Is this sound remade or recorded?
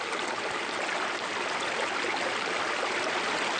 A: recorded